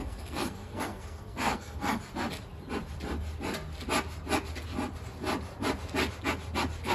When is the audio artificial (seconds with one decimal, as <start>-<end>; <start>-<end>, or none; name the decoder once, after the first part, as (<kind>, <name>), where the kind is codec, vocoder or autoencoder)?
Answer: 0.0-2.0 (codec, SNAC)